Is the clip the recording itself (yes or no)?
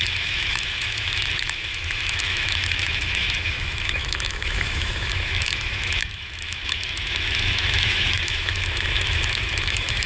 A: no